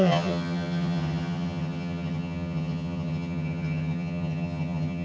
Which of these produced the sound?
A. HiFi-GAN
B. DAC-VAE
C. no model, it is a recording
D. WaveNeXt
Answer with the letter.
A